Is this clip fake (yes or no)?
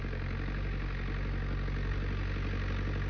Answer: no